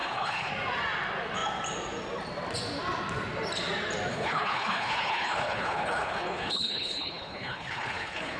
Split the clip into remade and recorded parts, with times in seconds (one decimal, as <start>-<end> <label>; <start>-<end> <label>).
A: 0.0-0.5 remade; 0.5-4.1 recorded; 4.1-8.4 remade

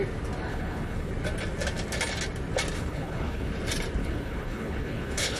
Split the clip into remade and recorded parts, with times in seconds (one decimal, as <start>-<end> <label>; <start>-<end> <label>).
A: 0.0-0.5 recorded; 0.5-1.1 remade; 1.1-2.8 recorded; 2.8-3.5 remade; 3.5-4.0 recorded; 4.0-5.4 remade